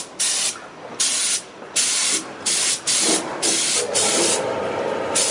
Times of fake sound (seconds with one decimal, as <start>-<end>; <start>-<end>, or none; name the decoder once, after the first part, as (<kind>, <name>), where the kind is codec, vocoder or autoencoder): 1.1-1.6 (vocoder, BigVGAN v2); 2.0-5.3